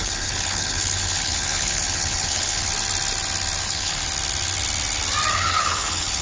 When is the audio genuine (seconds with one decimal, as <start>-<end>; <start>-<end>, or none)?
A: 2.7-3.6; 4.0-5.3